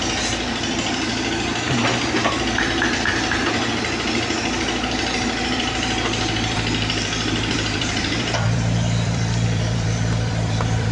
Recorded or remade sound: remade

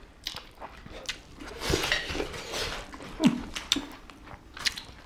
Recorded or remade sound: recorded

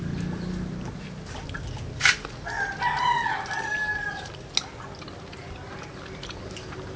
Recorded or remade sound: recorded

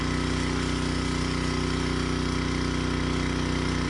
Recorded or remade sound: recorded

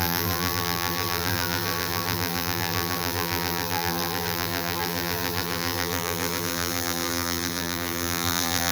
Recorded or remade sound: remade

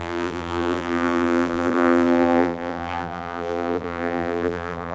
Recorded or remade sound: remade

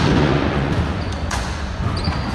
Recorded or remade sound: remade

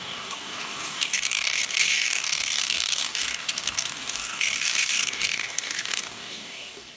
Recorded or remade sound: remade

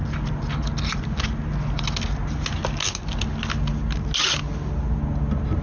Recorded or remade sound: recorded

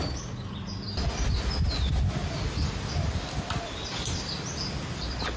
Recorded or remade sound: recorded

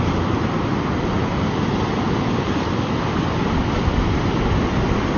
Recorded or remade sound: recorded